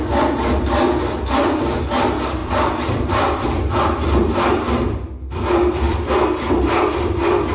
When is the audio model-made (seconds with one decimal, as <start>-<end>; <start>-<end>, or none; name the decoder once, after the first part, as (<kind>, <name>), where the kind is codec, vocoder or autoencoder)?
2.4-6.9 (vocoder, BigVGAN v2)